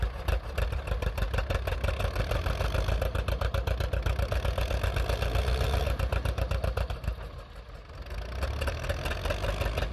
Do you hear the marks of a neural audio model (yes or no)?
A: no